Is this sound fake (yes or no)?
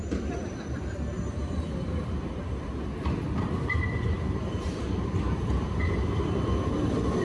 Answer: yes